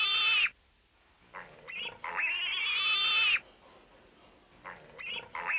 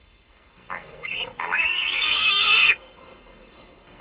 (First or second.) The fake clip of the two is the second